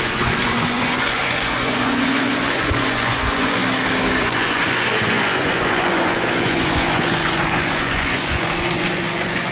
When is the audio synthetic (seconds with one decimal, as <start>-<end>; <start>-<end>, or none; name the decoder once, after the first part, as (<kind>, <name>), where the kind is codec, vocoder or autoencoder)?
0.0-3.6 (vocoder, Vocos); 4.2-9.5